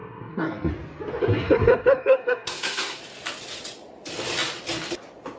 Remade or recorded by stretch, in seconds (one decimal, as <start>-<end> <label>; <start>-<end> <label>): 0.0-0.7 remade; 0.7-1.2 recorded; 1.2-3.0 remade; 3.0-5.4 recorded